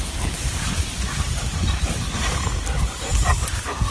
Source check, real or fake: real